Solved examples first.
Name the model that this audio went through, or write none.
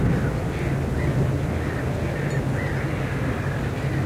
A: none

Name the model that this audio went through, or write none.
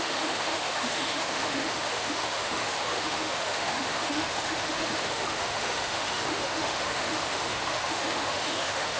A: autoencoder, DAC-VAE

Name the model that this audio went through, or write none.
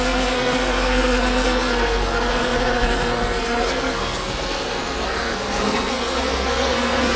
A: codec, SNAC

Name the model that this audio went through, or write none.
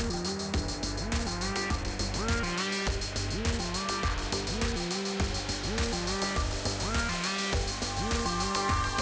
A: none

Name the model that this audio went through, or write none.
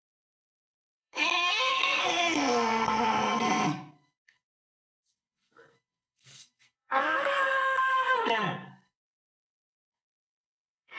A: codec, SNAC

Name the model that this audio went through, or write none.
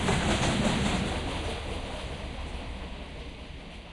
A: none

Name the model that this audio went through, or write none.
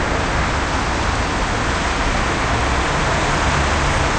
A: none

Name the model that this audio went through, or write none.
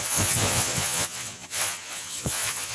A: vocoder, Vocos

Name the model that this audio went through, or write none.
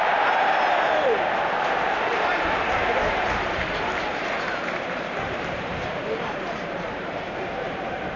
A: vocoder, BigVGAN v2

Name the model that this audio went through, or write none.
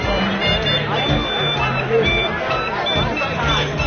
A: none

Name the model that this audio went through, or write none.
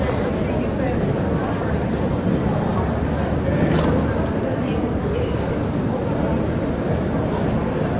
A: none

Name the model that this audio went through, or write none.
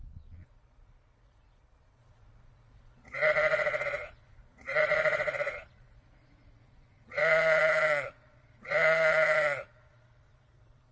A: vocoder, Vocos